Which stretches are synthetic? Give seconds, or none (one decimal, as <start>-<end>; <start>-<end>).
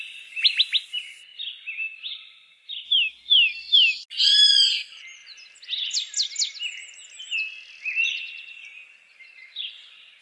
none